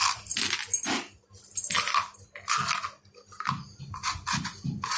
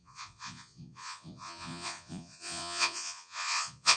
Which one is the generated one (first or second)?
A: second